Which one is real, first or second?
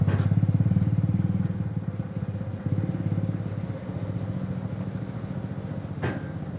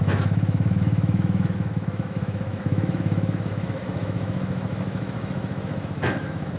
first